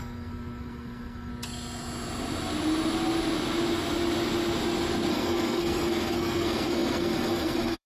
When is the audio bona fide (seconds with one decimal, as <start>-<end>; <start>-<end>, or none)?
1.3-5.1